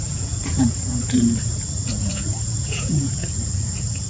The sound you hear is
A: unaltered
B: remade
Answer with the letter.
B